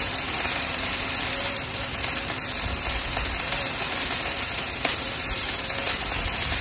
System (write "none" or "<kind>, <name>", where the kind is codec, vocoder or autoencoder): vocoder, BigVGAN v2